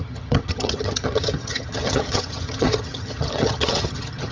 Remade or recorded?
remade